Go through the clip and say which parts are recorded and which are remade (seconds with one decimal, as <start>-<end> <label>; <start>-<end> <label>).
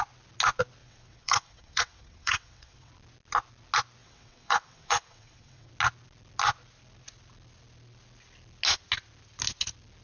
0.0-0.8 recorded; 0.8-2.9 remade; 2.9-4.0 recorded; 4.0-5.7 remade; 5.7-10.0 recorded